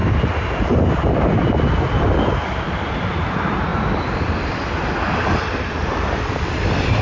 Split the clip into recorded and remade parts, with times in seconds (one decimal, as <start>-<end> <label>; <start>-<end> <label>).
0.0-1.7 recorded; 1.7-3.7 remade; 3.7-5.4 recorded; 5.4-7.0 remade